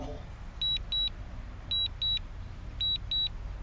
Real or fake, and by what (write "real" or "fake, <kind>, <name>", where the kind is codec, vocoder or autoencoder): real